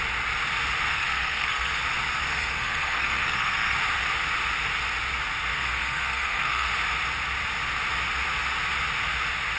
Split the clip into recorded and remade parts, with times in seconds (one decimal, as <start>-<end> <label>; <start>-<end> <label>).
0.0-0.9 recorded; 0.9-1.8 remade; 1.8-2.3 recorded; 2.3-3.8 remade; 3.8-5.5 recorded; 5.5-6.7 remade; 6.7-9.6 recorded